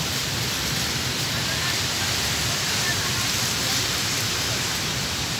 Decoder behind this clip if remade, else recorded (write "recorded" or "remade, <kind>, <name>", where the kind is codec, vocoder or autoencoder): remade, vocoder, BigVGAN v2